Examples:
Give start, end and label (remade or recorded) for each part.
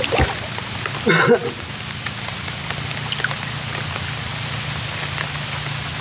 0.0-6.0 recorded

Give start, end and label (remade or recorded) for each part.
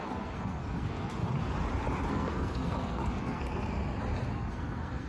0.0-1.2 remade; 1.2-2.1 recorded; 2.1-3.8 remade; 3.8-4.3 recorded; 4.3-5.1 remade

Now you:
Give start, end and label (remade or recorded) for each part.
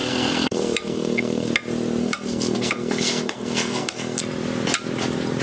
0.0-1.5 remade; 1.5-2.0 recorded; 2.0-4.2 remade; 4.2-5.4 recorded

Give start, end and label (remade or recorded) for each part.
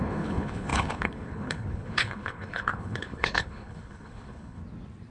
0.0-4.6 remade; 4.6-5.1 recorded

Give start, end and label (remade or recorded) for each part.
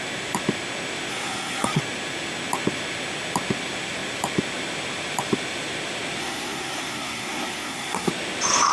0.0-1.1 recorded; 1.1-1.8 remade; 1.8-6.2 recorded; 6.2-8.1 remade; 8.1-8.7 recorded